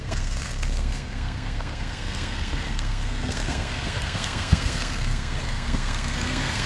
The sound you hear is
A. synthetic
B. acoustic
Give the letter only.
A